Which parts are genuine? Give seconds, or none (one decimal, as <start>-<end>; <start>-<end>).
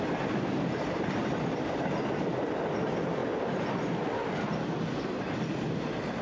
0.0-6.2